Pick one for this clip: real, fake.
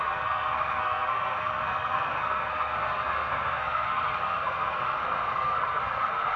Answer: fake